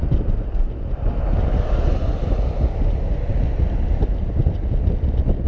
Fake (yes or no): no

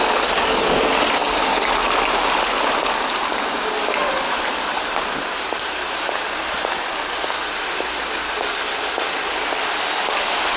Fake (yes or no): no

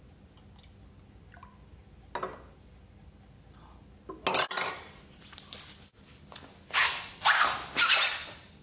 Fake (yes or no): no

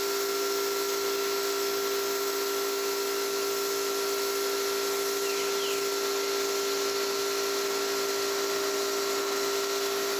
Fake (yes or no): no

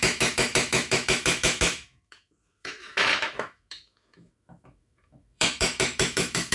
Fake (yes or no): yes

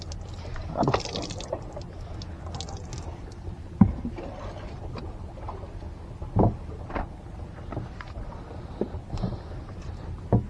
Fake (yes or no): no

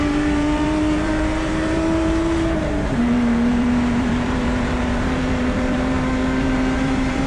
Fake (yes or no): yes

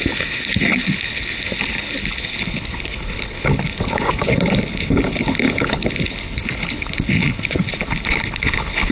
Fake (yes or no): yes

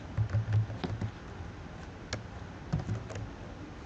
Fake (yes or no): no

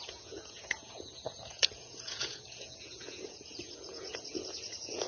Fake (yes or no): yes